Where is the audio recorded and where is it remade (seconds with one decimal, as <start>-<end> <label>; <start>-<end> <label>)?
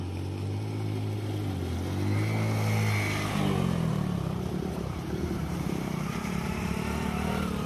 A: 0.0-3.9 recorded; 3.9-6.6 remade; 6.6-7.7 recorded